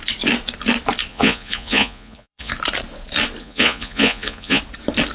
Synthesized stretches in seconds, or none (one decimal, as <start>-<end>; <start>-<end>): 1.1-2.5; 3.4-4.6